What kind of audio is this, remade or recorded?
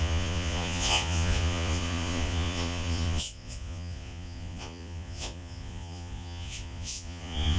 remade